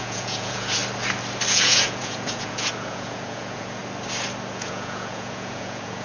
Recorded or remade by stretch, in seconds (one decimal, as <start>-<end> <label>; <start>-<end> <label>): 0.0-0.8 remade; 0.8-1.5 recorded; 1.5-3.8 remade; 3.8-4.5 recorded; 4.5-6.0 remade